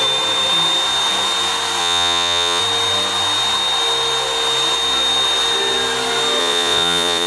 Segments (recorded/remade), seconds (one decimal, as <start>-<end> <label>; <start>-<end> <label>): 0.0-1.8 recorded; 1.8-2.6 remade; 2.6-6.4 recorded; 6.4-7.3 remade